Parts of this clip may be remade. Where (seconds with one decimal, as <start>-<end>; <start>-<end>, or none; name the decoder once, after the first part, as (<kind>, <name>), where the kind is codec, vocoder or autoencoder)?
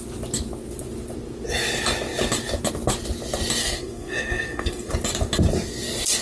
3.6-4.9 (codec, SNAC)